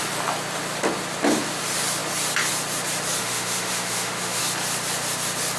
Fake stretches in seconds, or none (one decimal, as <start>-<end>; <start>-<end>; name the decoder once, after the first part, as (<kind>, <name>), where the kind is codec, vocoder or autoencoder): 3.2-4.4 (autoencoder, DAC-VAE)